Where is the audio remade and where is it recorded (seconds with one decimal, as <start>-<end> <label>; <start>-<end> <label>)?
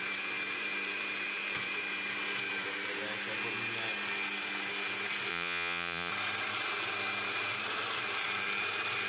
0.0-5.3 recorded; 5.3-6.1 remade; 6.1-9.1 recorded